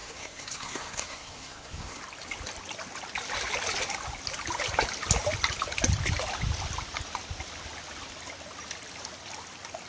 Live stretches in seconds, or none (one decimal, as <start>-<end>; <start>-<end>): 2.0-9.9